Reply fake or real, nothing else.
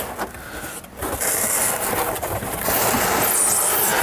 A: real